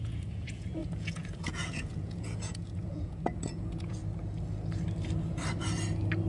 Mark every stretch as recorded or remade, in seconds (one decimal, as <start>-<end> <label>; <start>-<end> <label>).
0.0-4.0 remade; 4.0-6.3 recorded

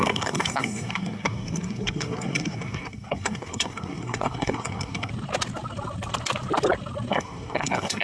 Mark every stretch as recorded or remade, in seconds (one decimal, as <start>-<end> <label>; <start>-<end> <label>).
0.0-5.1 remade; 5.1-7.1 recorded; 7.1-8.0 remade

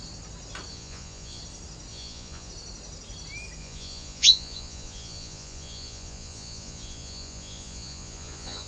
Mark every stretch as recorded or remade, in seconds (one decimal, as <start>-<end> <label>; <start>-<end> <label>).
0.0-0.7 recorded; 0.7-1.4 remade; 1.4-1.9 recorded; 1.9-2.5 remade; 2.5-3.6 recorded; 3.6-8.7 remade

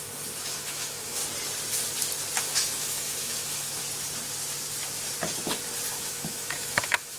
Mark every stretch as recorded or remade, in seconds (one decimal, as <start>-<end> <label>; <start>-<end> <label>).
0.0-1.2 remade; 1.2-2.4 recorded; 2.4-3.8 remade; 3.8-5.9 recorded; 5.9-7.2 remade

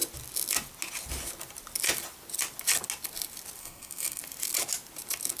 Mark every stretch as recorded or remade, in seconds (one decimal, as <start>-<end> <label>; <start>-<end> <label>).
0.0-3.6 recorded; 3.6-4.2 remade; 4.2-5.4 recorded